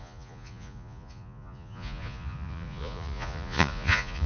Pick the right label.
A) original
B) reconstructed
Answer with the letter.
B